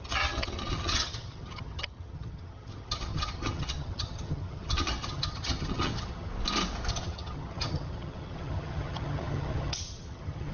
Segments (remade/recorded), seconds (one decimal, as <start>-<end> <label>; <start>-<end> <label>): 0.0-6.3 remade; 6.3-6.9 recorded; 6.9-10.5 remade